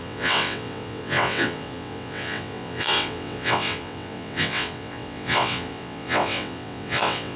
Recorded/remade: remade